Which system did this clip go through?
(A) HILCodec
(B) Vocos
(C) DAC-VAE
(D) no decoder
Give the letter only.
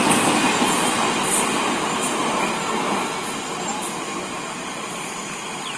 D